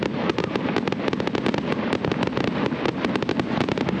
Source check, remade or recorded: recorded